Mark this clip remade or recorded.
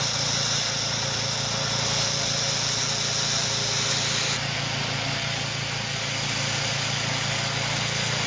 recorded